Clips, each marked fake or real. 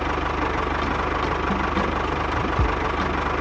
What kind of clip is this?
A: real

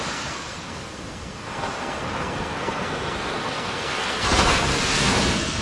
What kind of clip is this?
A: fake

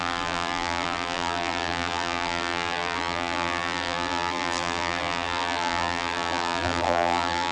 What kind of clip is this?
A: fake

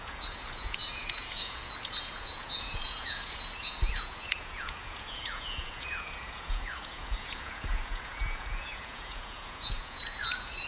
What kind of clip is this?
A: fake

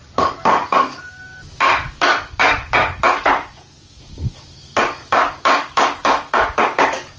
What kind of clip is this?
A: fake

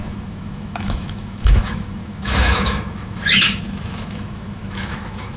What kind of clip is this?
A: fake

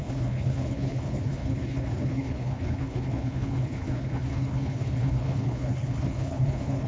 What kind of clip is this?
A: fake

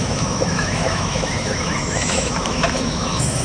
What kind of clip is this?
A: fake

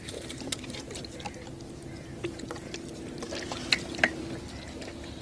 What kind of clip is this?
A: real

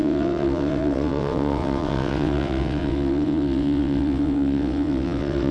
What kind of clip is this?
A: fake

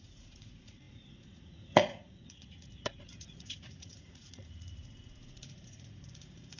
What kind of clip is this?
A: fake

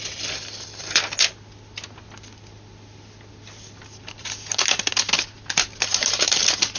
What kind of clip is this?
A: real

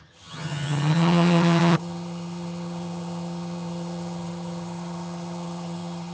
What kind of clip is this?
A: fake